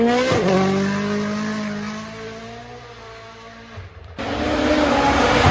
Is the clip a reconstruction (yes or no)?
no